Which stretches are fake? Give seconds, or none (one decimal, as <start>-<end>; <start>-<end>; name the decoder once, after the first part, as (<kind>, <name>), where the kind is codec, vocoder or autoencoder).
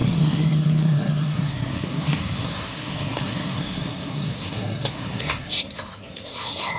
0.0-6.8 (codec, SNAC)